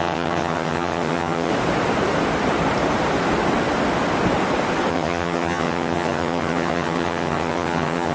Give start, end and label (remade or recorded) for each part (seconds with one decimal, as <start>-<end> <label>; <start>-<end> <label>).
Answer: 0.0-1.5 remade; 1.5-4.9 recorded; 4.9-8.1 remade